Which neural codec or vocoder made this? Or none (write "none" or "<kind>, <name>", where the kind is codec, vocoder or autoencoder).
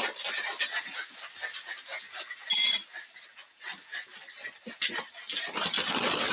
none